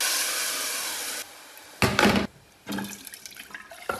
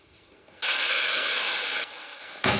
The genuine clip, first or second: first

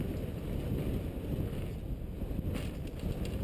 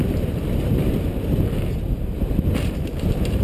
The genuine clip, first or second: first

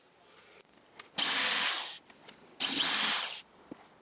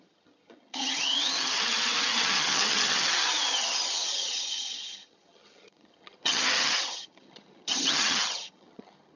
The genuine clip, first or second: first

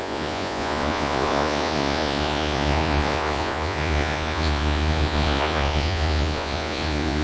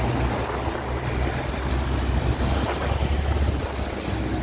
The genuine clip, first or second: second